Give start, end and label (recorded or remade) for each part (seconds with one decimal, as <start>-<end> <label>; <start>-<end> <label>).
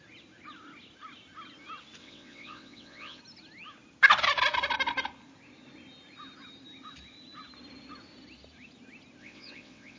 0.0-2.0 recorded; 2.0-3.2 remade; 3.2-9.2 recorded; 9.2-10.0 remade